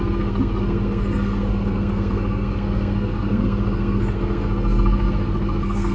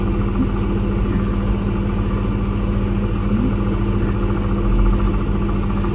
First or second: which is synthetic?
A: first